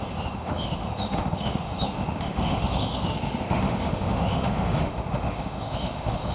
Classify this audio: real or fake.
fake